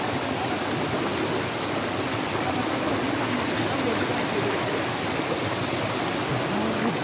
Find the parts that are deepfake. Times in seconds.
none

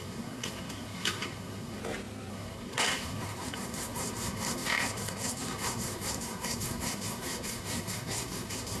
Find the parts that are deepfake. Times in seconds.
0.0-1.8; 2.3-8.8